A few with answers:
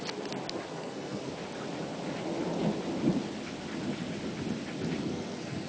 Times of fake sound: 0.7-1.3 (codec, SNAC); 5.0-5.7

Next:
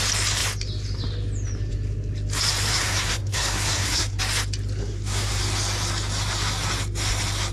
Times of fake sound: 2.7-4.2 (codec, SNAC); 4.8-5.4